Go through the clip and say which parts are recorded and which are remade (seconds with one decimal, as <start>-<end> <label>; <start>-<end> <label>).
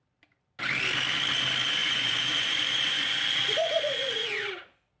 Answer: 0.0-1.8 recorded; 1.8-4.5 remade; 4.5-5.0 recorded